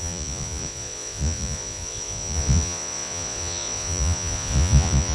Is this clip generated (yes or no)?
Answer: yes